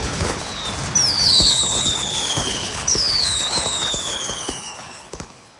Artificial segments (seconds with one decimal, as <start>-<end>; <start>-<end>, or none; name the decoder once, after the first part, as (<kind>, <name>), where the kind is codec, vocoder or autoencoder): 0.0-0.6 (codec, HILCodec); 1.1-5.6